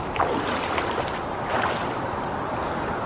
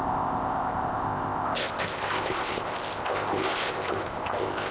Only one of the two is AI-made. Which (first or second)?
second